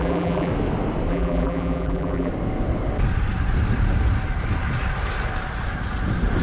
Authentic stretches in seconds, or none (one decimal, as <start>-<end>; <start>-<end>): 0.5-1.1; 2.3-6.4